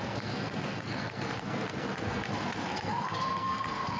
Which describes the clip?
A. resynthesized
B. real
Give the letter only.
A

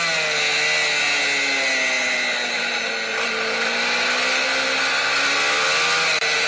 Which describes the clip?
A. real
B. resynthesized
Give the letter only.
A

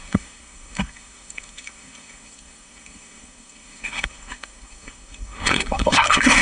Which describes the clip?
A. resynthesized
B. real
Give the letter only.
A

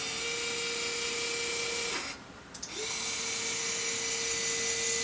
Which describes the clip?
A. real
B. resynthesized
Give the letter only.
A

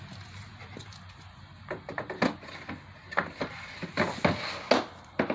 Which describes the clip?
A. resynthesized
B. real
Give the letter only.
B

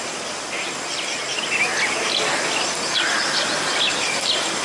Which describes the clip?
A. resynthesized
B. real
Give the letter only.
B